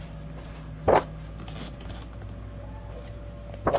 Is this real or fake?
real